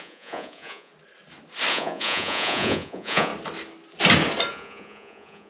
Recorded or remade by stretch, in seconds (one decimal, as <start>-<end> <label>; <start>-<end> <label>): 0.0-0.9 remade; 0.9-1.7 recorded; 1.7-3.3 remade; 3.3-4.5 recorded; 4.5-5.5 remade